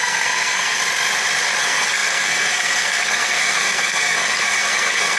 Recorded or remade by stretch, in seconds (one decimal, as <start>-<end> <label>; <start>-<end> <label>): 0.0-0.8 remade; 0.8-1.6 recorded; 1.6-5.2 remade